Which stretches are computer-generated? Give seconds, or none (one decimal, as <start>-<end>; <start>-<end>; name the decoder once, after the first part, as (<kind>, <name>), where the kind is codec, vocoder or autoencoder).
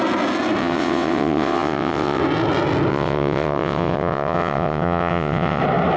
0.6-2.2 (vocoder, WaveNeXt); 2.9-5.6